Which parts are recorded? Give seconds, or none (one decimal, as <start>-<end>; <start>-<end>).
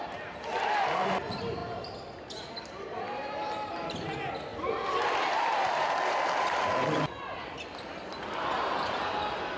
0.0-4.5; 7.1-9.6